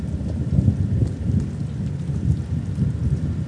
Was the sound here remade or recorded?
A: recorded